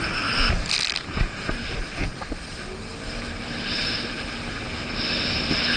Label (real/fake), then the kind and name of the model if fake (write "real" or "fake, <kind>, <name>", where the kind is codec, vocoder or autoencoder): real